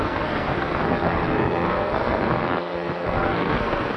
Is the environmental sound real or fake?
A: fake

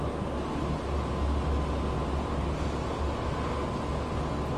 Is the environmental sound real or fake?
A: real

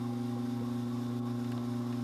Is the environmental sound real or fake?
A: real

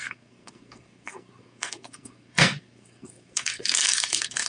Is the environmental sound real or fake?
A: fake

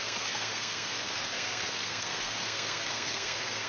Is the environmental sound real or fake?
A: fake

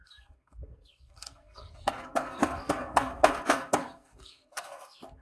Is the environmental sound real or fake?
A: fake